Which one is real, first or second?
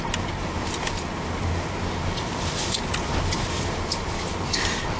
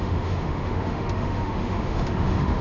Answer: first